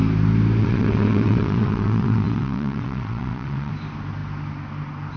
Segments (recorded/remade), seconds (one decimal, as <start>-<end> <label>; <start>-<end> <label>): 0.0-0.6 recorded; 0.6-3.7 remade; 3.7-5.2 recorded